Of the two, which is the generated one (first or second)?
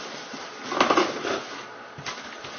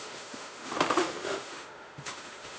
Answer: second